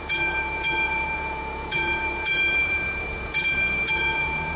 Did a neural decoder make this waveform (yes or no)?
yes